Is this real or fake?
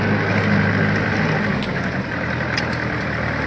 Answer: real